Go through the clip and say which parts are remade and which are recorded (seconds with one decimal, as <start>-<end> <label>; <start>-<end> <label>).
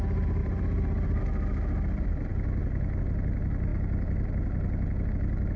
0.0-0.4 recorded; 0.4-1.2 remade; 1.2-5.6 recorded